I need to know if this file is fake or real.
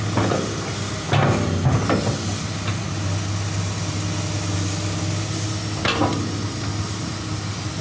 real